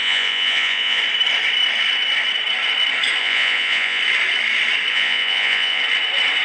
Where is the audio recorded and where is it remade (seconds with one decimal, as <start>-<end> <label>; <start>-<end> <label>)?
0.0-1.0 remade; 1.0-3.2 recorded; 3.2-4.0 remade; 4.0-4.9 recorded; 4.9-5.8 remade; 5.8-6.4 recorded